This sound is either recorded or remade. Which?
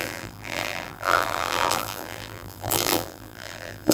remade